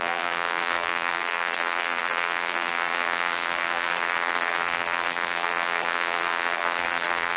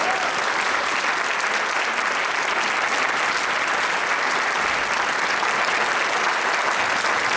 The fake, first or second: first